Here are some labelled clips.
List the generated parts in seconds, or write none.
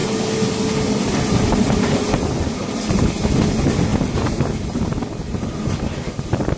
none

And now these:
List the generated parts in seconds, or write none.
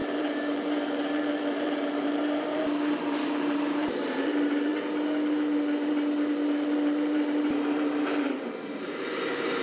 0.0-4.7 (vocoder, BigVGAN v2); 5.9-9.6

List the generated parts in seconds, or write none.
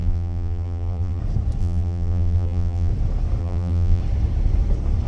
0.0-1.2 (vocoder, BigVGAN v2); 1.6-2.9; 3.4-4.0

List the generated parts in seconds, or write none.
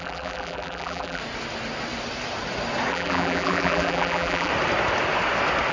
0.0-1.2 (vocoder, BigVGAN v2); 2.9-4.5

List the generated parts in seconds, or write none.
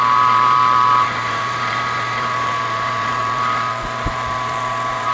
0.0-3.2 (vocoder, BigVGAN v2); 3.8-5.1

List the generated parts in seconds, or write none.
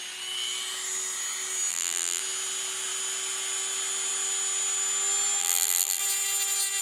1.7-2.2 (vocoder, BigVGAN v2); 5.4-6.0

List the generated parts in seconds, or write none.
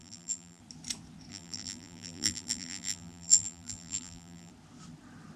0.0-0.6 (vocoder, BigVGAN v2); 1.3-4.5